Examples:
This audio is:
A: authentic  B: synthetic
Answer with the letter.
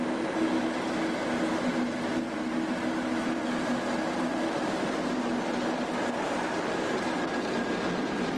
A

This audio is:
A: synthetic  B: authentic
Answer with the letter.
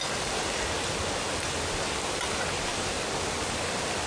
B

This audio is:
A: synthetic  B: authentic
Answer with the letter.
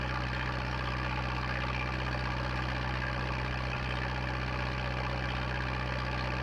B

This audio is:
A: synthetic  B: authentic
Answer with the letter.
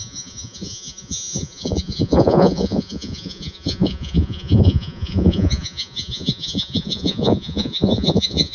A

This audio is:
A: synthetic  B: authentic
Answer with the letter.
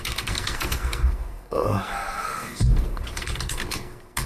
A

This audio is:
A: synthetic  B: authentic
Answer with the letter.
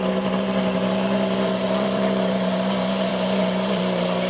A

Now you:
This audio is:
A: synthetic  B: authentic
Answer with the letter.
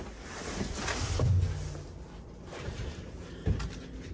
B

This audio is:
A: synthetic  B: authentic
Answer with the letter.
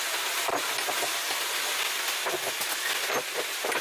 B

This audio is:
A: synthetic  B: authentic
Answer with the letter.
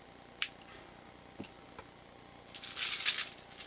B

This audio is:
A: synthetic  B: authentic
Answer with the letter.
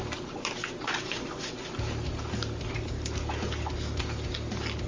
B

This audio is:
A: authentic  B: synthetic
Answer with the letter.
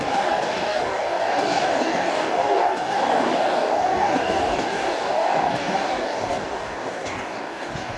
B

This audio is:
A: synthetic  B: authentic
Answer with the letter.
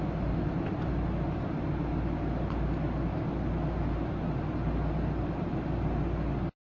B